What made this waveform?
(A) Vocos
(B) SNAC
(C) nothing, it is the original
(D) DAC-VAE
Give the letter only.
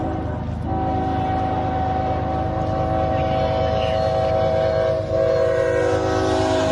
C